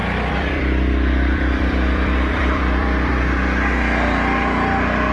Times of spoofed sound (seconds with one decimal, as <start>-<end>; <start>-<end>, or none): 0.0-3.1